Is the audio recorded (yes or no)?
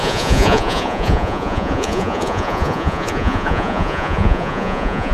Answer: no